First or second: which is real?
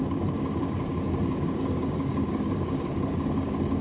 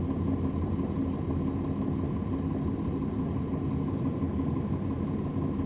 second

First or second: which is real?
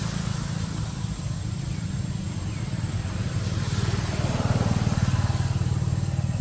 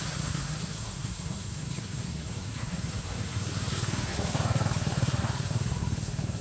first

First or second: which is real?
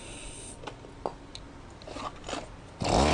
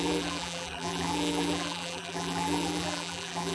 first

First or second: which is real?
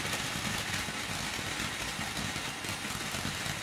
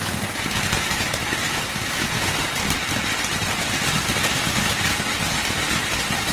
first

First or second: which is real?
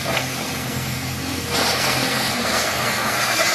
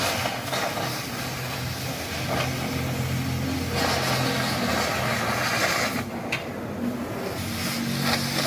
second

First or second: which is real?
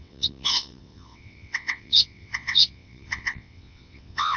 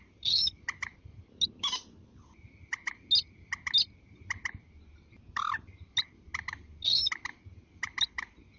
second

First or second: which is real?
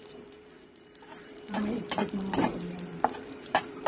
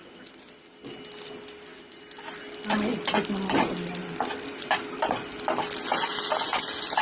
second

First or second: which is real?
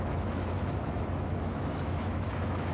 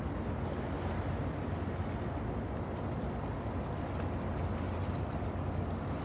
second